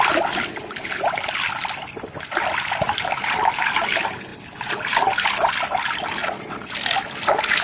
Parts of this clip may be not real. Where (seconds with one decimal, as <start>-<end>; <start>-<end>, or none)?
6.2-6.7